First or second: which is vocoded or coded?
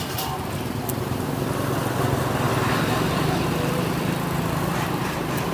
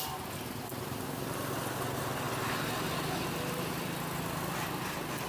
first